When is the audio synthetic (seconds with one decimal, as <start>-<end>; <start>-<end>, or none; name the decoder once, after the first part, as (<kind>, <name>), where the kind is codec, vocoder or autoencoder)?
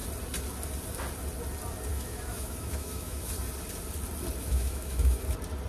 1.9-3.3 (autoencoder, DAC-VAE); 4.4-5.2